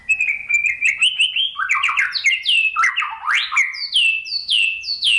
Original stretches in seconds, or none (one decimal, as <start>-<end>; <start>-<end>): 0.0-4.4